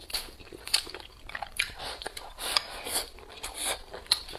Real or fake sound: fake